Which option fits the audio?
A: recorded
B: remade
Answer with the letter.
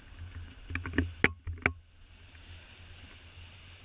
A